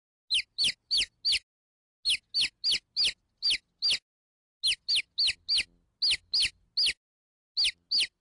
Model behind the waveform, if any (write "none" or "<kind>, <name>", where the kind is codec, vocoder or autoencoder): none